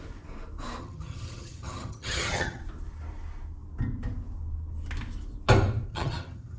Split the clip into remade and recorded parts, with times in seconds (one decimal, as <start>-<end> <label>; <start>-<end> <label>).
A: 0.0-0.8 recorded; 0.8-2.6 remade; 2.6-5.9 recorded; 5.9-6.6 remade

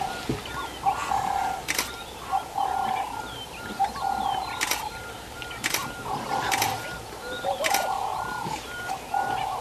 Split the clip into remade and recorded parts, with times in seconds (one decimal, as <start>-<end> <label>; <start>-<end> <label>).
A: 0.0-9.6 recorded

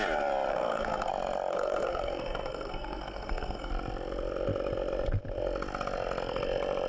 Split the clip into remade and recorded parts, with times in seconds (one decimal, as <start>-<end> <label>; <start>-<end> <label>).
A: 0.0-0.5 recorded; 0.5-1.1 remade; 1.1-1.5 recorded; 1.5-3.7 remade; 3.7-6.9 recorded

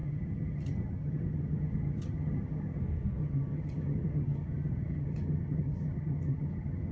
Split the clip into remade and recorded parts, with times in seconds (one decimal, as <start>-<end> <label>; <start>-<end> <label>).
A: 0.0-2.8 remade; 2.8-3.2 recorded; 3.2-6.9 remade

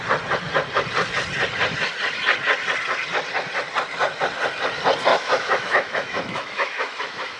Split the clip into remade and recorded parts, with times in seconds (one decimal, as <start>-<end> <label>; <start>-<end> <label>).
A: 0.0-5.1 recorded; 5.1-7.4 remade

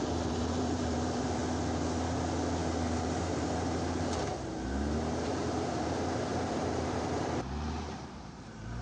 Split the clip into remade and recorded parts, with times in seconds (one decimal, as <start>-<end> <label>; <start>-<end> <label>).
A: 0.0-1.4 remade; 1.4-3.0 recorded; 3.0-4.3 remade; 4.3-5.3 recorded; 5.3-8.8 remade

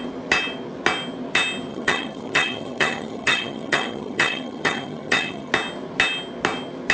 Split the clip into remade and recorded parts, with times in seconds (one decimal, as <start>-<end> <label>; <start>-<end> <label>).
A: 0.0-1.7 recorded; 1.7-5.5 remade; 5.5-6.9 recorded

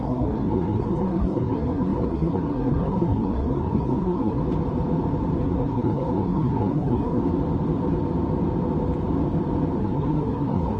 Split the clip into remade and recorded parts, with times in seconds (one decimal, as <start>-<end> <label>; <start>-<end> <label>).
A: 0.0-4.4 remade; 4.4-5.4 recorded; 5.4-7.2 remade; 7.2-9.8 recorded; 9.8-10.8 remade